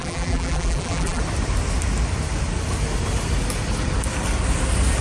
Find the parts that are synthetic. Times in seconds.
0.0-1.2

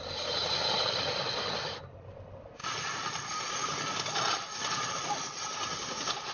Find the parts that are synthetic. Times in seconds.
none

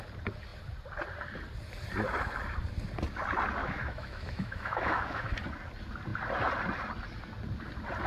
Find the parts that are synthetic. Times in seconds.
3.6-5.4

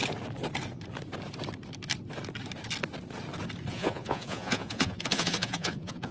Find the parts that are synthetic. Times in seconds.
3.7-6.1

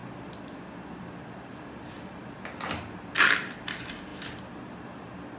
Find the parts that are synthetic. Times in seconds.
none

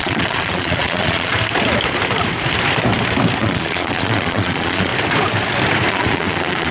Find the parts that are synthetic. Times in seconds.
0.0-1.3; 3.4-4.9; 5.9-6.7